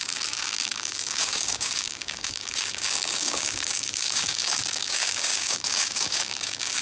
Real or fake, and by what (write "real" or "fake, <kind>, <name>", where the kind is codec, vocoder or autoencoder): fake, codec, DAC